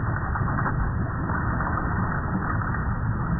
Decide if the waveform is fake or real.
real